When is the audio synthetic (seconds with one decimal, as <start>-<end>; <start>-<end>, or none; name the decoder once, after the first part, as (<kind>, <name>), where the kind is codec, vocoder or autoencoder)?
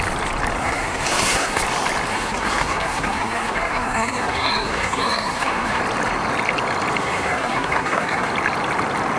0.6-1.6 (codec, SNAC); 2.1-5.8; 7.0-8.3